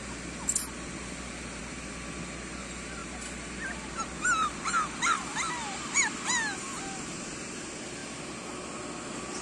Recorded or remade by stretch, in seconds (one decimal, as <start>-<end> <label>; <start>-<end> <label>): 0.0-9.4 recorded